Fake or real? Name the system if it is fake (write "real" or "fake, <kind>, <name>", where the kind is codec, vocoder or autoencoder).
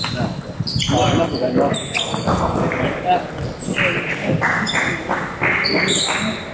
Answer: real